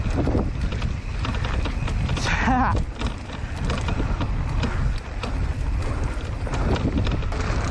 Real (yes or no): yes